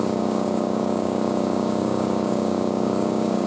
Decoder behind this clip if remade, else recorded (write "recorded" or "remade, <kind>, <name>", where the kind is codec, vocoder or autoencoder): remade, codec, DAC